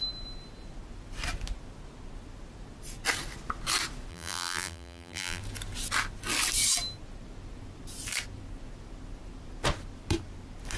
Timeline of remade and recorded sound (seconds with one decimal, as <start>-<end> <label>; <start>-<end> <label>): 0.0-4.1 recorded; 4.1-5.4 remade; 5.4-10.8 recorded